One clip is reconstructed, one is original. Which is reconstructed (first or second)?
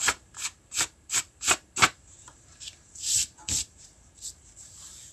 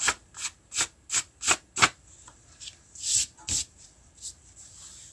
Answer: first